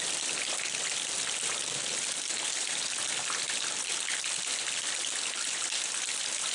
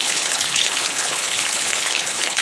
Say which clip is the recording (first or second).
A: first